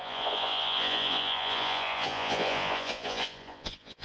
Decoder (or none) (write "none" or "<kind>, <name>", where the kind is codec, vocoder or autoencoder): vocoder, Vocos